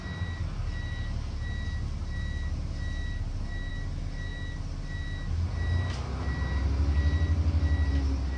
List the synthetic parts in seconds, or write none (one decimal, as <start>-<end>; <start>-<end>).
none